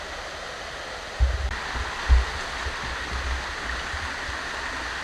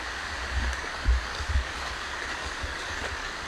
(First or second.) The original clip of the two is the first